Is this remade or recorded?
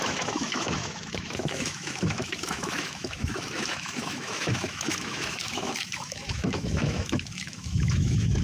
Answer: remade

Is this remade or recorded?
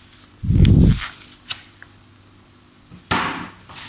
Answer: recorded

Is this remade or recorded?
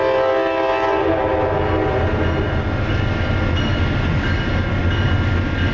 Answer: recorded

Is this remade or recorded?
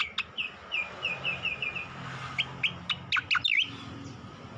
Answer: recorded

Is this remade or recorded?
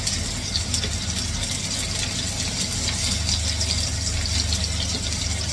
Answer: recorded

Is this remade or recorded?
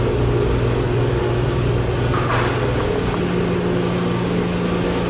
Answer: recorded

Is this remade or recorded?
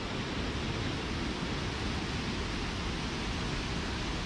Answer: recorded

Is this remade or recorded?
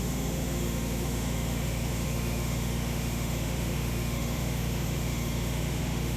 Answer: remade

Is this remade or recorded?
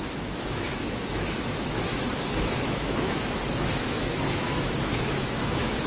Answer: remade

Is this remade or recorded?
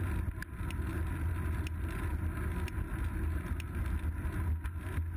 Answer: recorded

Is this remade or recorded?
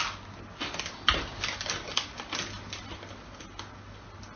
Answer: recorded